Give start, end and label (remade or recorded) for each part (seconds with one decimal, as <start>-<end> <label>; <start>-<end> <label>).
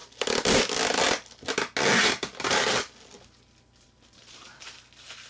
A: 0.0-5.3 recorded